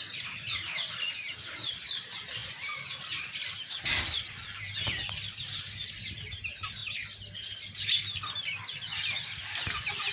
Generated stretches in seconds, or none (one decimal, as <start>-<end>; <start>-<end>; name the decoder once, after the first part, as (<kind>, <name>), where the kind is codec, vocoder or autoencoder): none